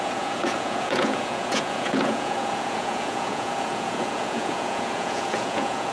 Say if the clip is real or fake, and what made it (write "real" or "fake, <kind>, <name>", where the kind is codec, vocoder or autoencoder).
fake, vocoder, Vocos